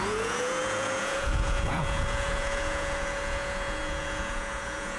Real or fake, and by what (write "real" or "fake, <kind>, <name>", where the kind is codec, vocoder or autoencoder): fake, vocoder, Vocos